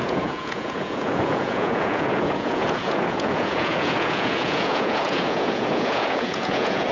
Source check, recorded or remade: remade